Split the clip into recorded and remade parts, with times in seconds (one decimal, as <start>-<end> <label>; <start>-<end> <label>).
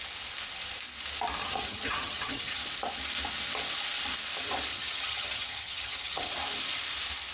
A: 0.0-1.4 recorded; 1.4-2.6 remade; 2.6-4.7 recorded; 4.7-6.3 remade; 6.3-7.3 recorded